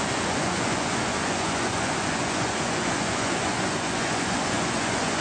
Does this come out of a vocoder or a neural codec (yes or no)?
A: yes